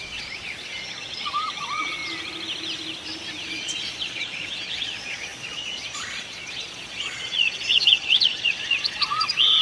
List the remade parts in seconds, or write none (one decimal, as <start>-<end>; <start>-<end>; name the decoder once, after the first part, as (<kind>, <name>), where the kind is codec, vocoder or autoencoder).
0.0-2.0 (vocoder, Vocos); 3.5-9.6